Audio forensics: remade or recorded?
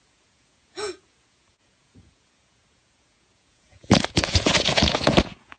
remade